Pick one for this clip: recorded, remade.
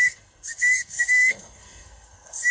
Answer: remade